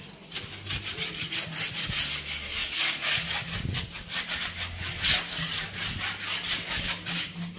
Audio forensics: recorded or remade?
recorded